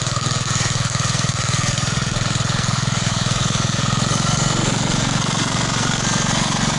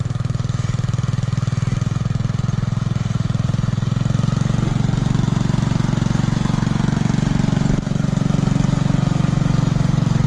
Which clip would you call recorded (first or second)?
second